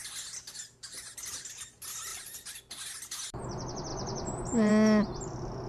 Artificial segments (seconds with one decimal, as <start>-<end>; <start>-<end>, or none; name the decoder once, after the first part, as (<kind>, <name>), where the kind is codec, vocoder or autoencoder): 2.1-2.6 (vocoder, BigVGAN v2); 3.9-4.7